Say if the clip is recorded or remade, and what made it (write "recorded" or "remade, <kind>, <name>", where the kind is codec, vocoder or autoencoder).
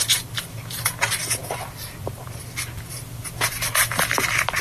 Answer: recorded